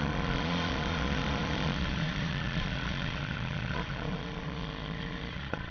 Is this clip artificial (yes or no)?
yes